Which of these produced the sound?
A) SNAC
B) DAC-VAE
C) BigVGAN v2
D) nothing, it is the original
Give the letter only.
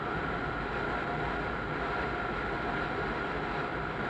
D